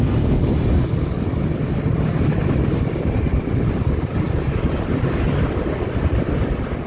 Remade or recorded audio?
remade